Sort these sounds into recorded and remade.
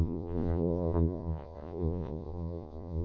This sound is remade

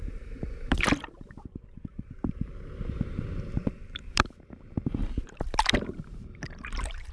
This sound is remade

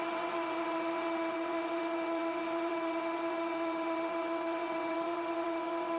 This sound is remade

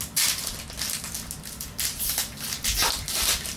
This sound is recorded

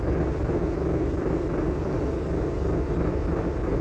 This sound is recorded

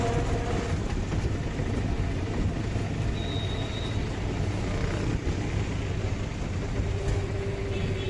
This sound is recorded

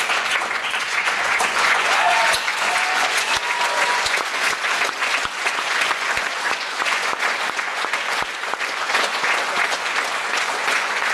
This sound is remade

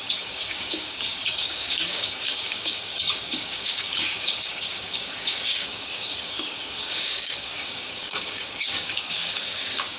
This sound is remade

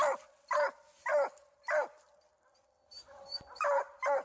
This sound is recorded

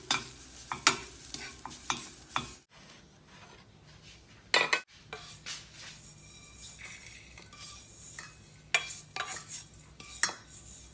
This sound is recorded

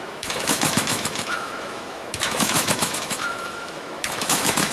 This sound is remade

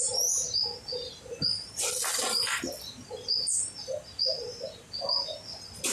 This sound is recorded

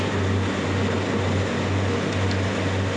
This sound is recorded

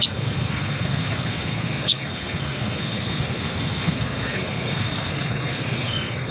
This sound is remade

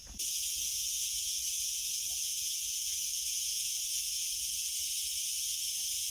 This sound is remade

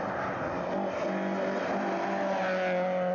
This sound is recorded